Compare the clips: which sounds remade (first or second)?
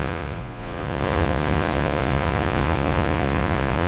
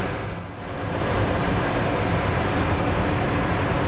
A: first